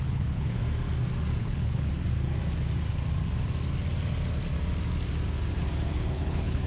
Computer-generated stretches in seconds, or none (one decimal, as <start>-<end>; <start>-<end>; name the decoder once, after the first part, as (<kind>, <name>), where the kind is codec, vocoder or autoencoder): 0.0-0.6 (codec, HILCodec); 1.4-1.9; 5.9-6.7